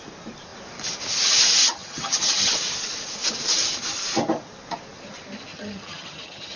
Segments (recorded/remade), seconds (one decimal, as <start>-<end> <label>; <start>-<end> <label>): 0.0-1.6 recorded; 1.6-2.5 remade; 2.5-5.5 recorded; 5.5-6.6 remade

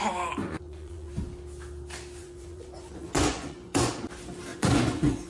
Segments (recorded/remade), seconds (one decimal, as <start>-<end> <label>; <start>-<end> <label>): 0.0-0.4 recorded; 0.4-1.1 remade; 1.1-2.2 recorded; 2.2-3.9 remade; 3.9-4.5 recorded; 4.5-5.3 remade

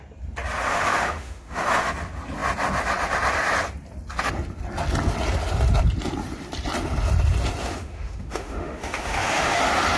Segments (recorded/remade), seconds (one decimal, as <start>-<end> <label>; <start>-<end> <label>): 0.0-0.7 recorded; 0.7-1.9 remade; 1.9-7.6 recorded; 7.6-9.6 remade; 9.6-10.0 recorded